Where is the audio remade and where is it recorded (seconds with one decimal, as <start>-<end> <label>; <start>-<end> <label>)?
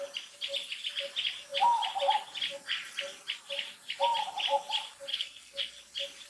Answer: 0.0-5.1 recorded; 5.1-5.7 remade; 5.7-6.3 recorded